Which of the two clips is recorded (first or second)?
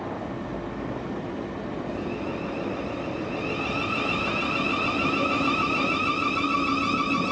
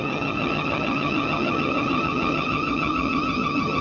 first